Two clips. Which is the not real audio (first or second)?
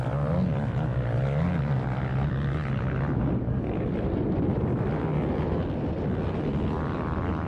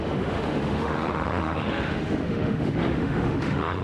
second